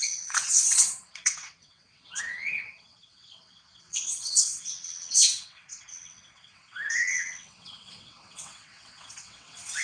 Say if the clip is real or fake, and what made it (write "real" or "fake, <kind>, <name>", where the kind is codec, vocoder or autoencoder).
fake, vocoder, WaveNeXt